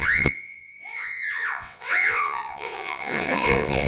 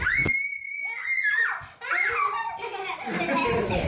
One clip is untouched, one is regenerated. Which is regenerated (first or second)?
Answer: first